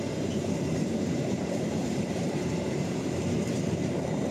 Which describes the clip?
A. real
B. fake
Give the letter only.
B